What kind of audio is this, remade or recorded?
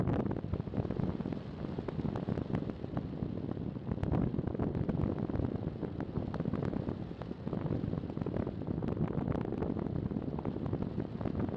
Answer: recorded